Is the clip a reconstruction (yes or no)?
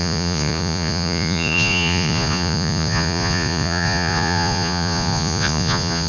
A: yes